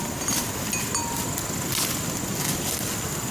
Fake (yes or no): no